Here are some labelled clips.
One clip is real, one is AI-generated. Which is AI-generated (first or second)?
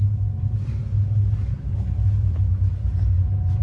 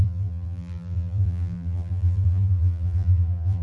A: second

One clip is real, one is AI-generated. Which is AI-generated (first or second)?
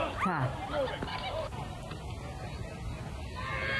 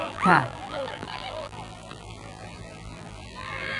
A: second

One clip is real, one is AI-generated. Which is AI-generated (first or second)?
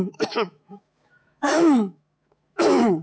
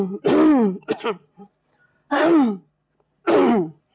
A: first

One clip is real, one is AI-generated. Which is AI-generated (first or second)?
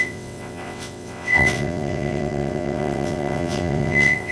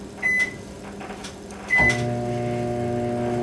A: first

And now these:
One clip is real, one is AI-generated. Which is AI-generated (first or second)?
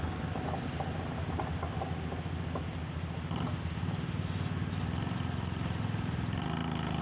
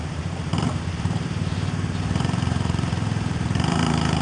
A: second